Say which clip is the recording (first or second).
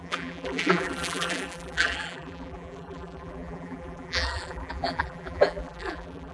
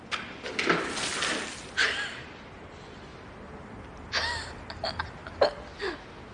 second